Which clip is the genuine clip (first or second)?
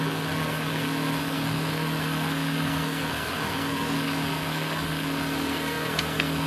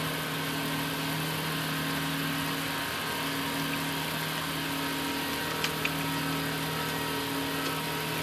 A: second